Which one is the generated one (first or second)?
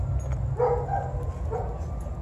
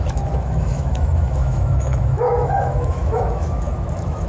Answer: second